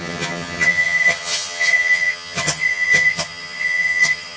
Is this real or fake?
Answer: fake